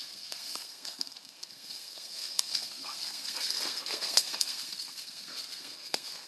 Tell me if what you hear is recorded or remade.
remade